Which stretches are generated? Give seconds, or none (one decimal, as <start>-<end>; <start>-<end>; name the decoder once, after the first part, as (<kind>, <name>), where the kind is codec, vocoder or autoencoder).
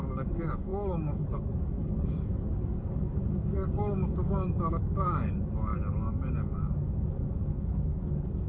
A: 0.0-8.5 (codec, DAC)